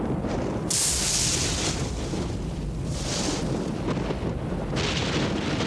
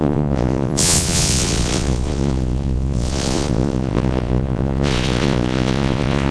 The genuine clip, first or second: first